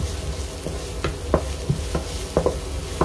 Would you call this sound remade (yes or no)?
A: no